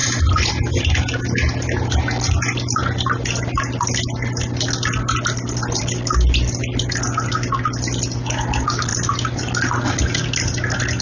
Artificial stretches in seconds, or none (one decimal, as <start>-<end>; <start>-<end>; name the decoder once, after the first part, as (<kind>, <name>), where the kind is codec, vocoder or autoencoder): none